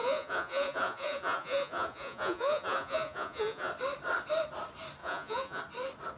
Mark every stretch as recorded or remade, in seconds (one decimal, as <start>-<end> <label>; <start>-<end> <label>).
0.0-3.7 remade; 3.7-5.0 recorded; 5.0-5.6 remade; 5.6-6.2 recorded